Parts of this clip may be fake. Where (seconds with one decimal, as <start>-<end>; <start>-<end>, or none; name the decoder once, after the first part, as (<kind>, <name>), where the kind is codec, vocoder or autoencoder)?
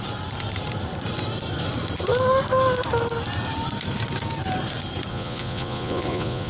5.1-6.5 (vocoder, Vocos)